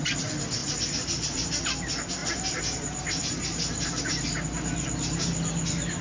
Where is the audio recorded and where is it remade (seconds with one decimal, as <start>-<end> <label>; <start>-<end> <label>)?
0.0-0.6 recorded; 0.6-1.5 remade; 1.5-2.2 recorded; 2.2-4.0 remade; 4.0-6.0 recorded